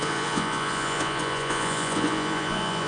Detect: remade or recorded remade